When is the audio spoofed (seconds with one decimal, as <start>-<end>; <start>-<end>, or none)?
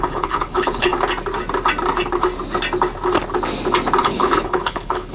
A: 0.0-0.9; 4.0-5.1